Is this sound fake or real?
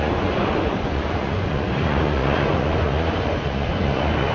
fake